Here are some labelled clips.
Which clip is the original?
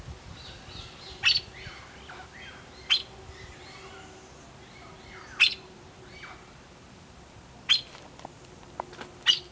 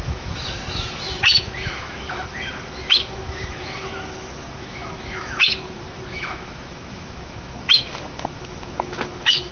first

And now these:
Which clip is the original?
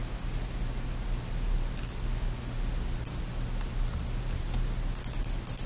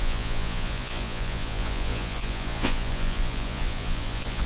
first